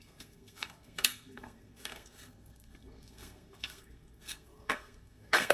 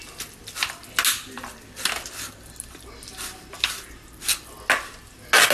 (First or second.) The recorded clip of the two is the second